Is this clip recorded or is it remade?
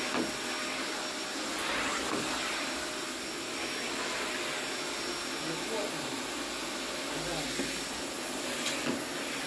recorded